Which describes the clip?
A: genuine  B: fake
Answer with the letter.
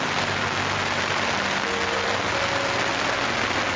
A